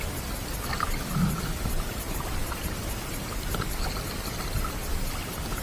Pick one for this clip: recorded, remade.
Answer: recorded